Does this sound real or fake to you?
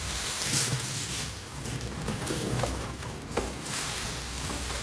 fake